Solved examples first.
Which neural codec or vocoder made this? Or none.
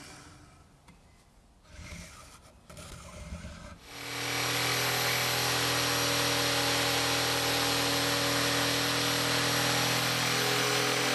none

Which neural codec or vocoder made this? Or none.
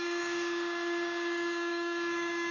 codec, DAC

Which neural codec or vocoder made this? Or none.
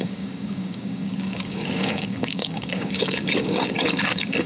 codec, DAC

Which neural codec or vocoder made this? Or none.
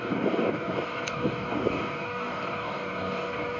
codec, DAC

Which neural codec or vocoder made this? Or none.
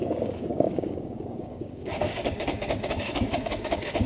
codec, DAC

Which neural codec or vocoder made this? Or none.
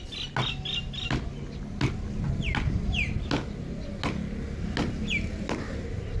none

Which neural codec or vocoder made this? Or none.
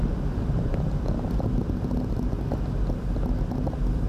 none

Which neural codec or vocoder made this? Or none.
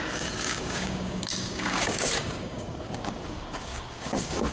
codec, DAC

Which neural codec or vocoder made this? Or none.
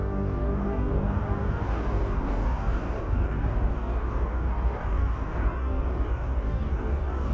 codec, DAC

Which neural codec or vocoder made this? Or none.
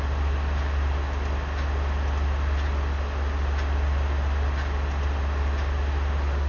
none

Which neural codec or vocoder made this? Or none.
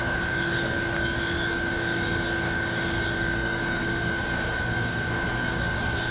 codec, DAC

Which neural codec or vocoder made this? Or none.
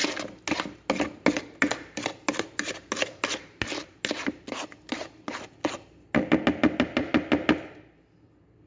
none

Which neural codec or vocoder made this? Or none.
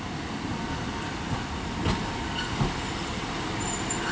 none